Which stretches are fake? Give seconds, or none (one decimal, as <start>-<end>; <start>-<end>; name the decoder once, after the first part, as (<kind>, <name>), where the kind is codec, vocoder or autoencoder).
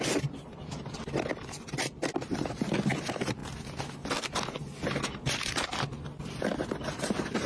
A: 0.0-3.4 (vocoder, BigVGAN v2); 5.3-7.5